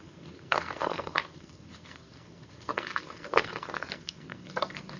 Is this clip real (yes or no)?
no